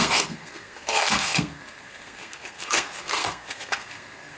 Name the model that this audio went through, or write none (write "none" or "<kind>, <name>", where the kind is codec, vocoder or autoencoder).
codec, SNAC